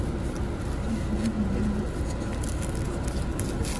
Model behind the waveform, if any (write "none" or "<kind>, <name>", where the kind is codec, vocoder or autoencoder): none